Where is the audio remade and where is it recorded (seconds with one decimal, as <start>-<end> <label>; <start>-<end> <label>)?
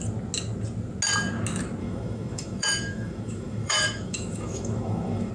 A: 0.0-1.8 recorded; 1.8-5.3 remade